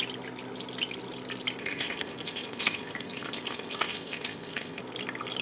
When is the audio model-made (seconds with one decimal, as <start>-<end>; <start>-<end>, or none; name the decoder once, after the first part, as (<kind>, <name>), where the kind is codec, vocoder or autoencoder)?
1.6-4.8 (codec, ZipCodec)